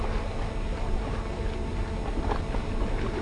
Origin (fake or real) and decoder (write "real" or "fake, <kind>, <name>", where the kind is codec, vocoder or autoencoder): real